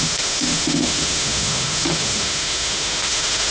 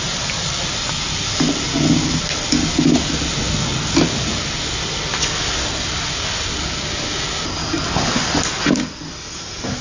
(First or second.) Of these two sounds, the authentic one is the second